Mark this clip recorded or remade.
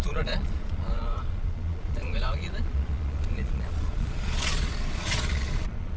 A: remade